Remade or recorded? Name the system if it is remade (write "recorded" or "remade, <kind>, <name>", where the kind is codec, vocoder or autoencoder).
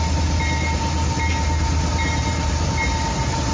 recorded